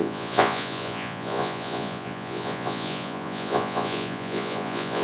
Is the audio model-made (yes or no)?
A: yes